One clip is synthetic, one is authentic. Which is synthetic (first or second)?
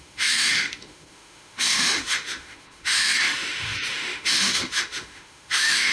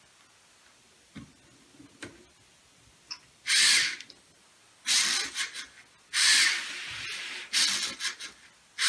first